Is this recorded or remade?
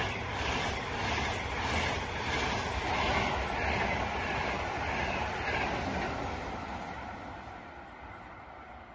recorded